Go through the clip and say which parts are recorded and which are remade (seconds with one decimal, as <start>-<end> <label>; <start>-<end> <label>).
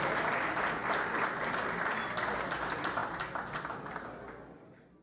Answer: 0.0-5.0 recorded